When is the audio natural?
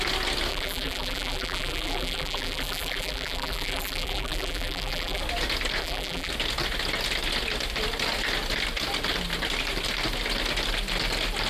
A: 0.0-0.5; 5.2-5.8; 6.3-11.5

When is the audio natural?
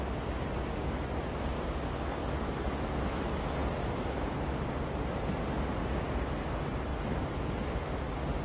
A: 0.0-6.9; 7.8-8.4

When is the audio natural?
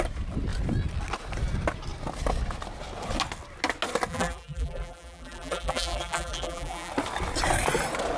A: 0.0-4.1; 6.9-8.2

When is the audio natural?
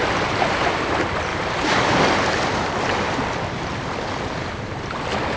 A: 0.0-1.3; 4.5-5.4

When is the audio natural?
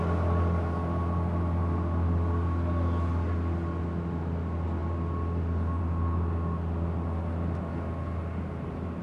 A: 0.0-9.0